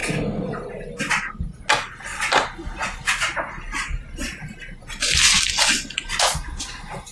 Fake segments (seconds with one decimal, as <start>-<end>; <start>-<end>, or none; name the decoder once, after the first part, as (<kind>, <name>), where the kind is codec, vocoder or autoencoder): none